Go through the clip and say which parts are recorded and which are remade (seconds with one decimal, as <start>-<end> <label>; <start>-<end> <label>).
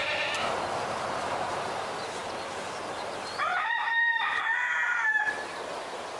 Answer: 0.0-0.5 remade; 0.5-3.5 recorded; 3.5-5.1 remade; 5.1-6.2 recorded